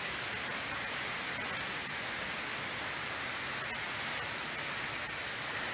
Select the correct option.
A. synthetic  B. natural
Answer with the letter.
B